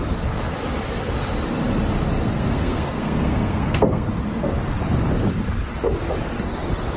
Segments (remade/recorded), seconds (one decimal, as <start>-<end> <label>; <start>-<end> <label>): 0.0-2.3 recorded; 2.3-4.1 remade; 4.1-7.0 recorded